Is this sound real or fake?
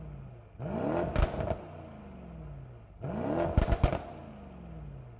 real